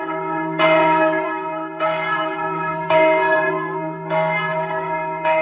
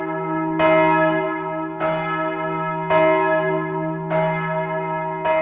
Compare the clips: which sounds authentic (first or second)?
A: second